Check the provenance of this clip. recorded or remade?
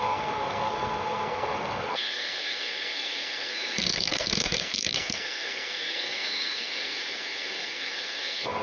remade